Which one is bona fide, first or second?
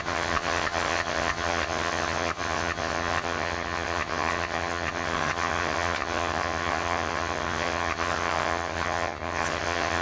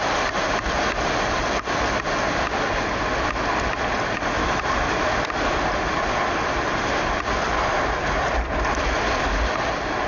second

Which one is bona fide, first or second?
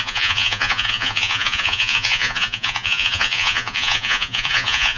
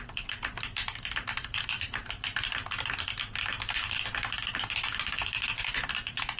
second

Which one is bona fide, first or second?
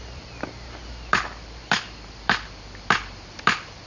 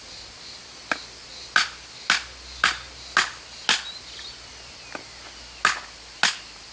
second